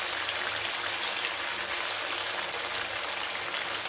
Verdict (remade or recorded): recorded